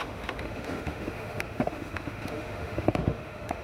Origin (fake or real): fake